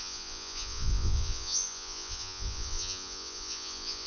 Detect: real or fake fake